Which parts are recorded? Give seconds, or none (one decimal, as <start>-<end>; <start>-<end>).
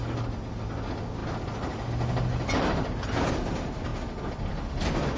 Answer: 0.0-5.2